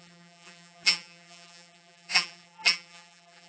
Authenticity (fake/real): fake